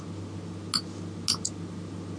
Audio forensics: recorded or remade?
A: recorded